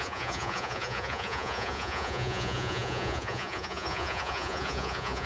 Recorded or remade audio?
remade